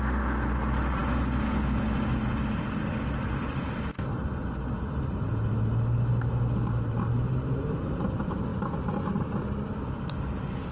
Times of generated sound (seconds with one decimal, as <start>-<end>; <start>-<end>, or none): none